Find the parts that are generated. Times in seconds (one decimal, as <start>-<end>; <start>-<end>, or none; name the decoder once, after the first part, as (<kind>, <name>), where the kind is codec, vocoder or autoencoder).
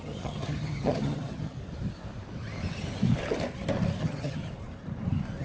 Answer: 0.0-1.6 (vocoder, HiFi-GAN); 4.0-4.4